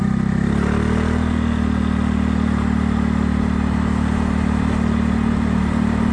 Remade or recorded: recorded